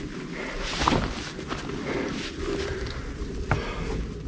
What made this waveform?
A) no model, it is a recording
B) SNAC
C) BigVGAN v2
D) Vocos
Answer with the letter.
A